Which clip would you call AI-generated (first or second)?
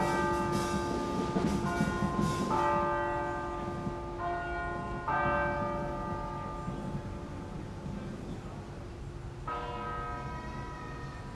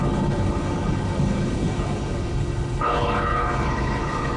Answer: second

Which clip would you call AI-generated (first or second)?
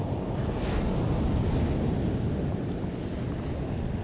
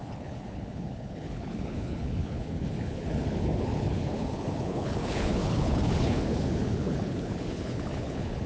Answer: second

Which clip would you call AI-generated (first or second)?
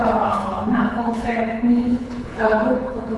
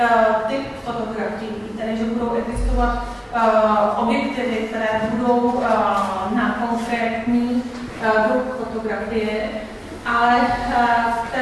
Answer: first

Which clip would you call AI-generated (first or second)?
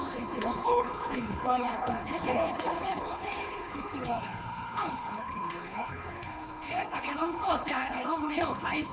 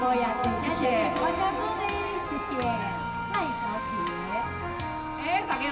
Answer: first